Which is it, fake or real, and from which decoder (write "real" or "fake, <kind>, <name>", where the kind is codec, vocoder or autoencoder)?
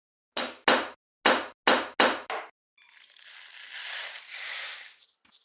real